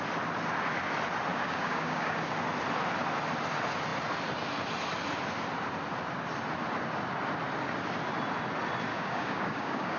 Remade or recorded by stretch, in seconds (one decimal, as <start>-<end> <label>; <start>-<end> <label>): 0.0-1.3 recorded; 1.3-2.3 remade; 2.3-8.9 recorded; 8.9-10.0 remade